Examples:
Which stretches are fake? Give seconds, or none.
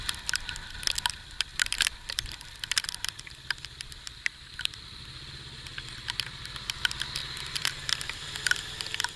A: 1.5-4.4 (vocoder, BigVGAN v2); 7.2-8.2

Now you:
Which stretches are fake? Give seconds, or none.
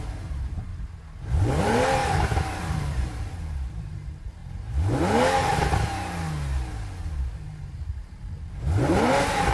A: 0.0-0.7 (vocoder, BigVGAN v2); 1.6-2.0; 2.6-4.4; 7.2-9.5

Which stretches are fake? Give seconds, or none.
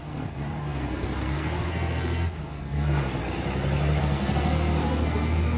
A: 0.0-3.2 (codec, SNAC); 4.0-5.6